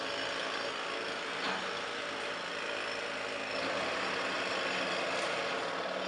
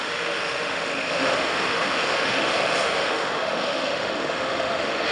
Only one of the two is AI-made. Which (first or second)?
second